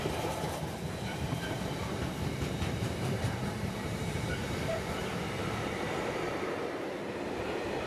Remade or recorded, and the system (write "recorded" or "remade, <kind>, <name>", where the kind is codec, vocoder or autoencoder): remade, vocoder, BigVGAN v2